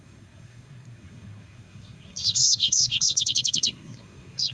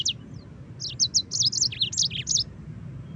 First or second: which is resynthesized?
first